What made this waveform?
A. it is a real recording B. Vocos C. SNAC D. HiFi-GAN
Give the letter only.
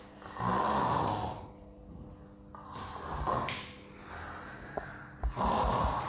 A